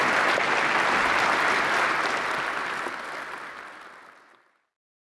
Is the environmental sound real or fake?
real